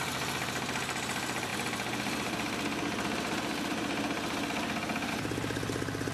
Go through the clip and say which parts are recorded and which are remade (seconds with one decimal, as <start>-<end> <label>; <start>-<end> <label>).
0.0-6.1 recorded